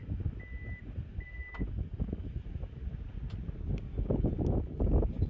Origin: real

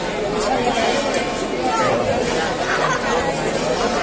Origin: real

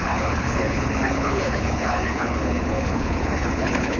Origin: fake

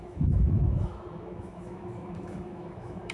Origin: fake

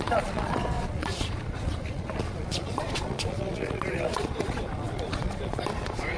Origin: fake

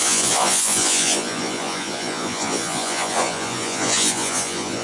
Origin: fake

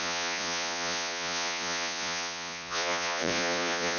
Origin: fake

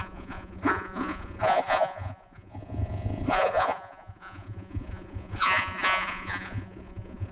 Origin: fake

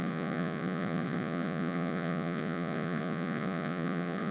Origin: fake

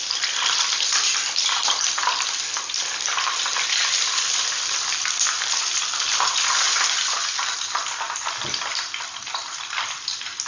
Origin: fake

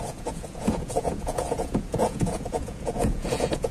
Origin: fake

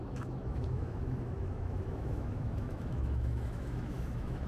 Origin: fake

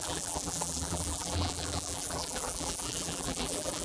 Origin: fake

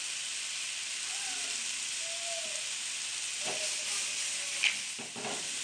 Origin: real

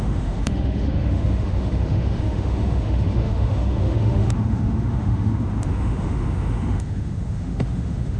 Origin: fake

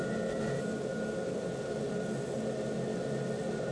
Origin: real